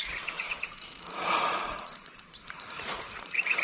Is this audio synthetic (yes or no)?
yes